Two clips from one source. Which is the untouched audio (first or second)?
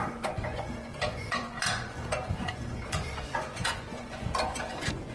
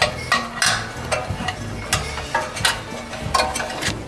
second